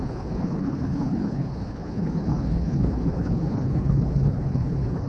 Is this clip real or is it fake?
fake